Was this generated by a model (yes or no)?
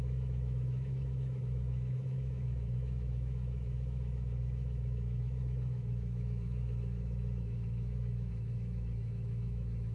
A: yes